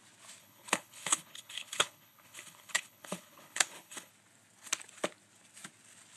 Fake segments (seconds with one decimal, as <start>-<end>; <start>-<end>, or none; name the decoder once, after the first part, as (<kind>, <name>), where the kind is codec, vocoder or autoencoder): 0.4-4.1 (codec, HILCodec)